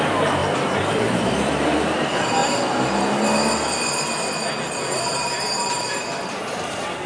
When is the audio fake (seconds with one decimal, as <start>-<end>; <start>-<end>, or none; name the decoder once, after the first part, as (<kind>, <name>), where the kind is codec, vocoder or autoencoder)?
0.0-2.4 (vocoder, BigVGAN v2); 5.0-7.1